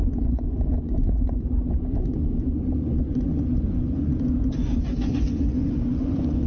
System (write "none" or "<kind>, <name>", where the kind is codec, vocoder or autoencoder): vocoder, Vocos